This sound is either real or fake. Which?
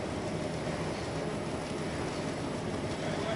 real